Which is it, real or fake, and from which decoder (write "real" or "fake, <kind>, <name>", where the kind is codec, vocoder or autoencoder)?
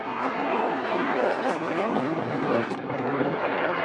fake, codec, SNAC